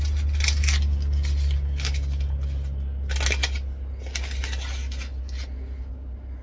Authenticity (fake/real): real